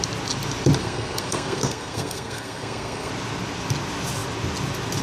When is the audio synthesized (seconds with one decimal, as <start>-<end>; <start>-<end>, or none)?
0.8-3.1